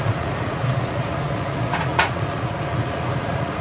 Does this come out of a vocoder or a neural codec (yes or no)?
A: yes